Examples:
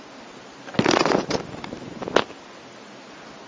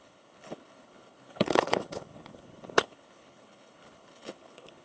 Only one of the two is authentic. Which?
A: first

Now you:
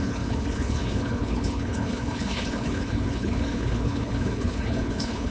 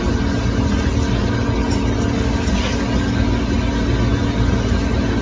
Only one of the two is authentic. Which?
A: second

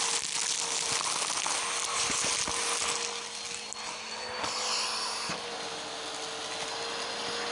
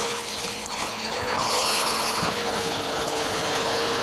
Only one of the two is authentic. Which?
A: first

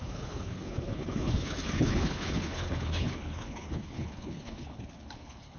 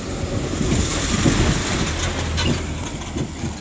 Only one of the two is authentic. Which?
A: second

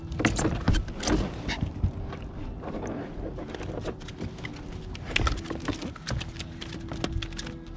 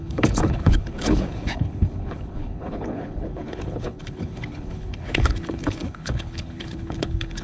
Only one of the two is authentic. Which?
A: first